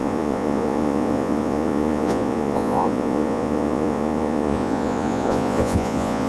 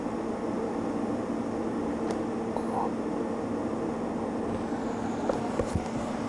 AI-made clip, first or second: first